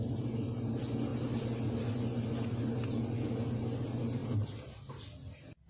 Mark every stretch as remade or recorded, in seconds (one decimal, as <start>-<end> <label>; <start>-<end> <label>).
0.0-5.7 recorded